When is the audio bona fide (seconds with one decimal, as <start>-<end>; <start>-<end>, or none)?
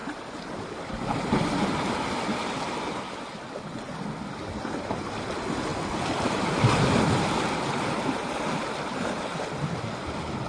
0.0-5.7; 7.0-10.5